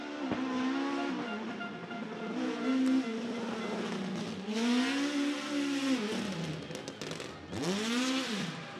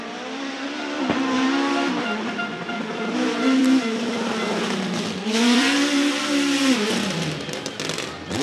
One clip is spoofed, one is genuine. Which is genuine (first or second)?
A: first